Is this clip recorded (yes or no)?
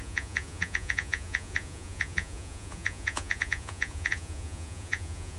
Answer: no